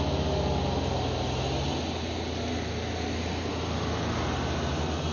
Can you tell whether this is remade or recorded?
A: recorded